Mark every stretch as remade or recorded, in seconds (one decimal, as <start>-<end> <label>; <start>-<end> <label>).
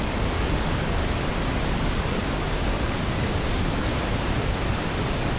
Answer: 0.0-1.0 remade; 1.0-1.7 recorded; 1.7-3.9 remade; 3.9-4.4 recorded; 4.4-5.4 remade